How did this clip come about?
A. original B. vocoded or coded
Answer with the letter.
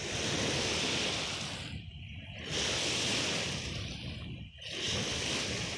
A